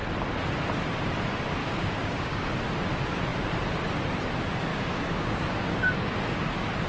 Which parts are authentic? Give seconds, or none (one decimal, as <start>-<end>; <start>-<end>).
0.0-1.6; 2.5-4.7; 6.5-6.9